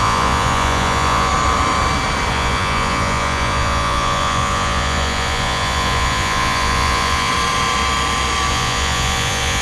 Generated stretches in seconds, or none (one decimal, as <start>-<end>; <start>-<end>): 0.0-1.3; 2.3-7.3; 8.5-9.6